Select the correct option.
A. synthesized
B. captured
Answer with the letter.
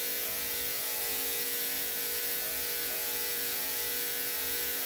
A